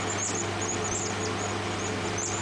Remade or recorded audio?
recorded